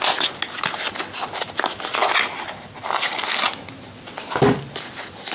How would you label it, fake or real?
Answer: real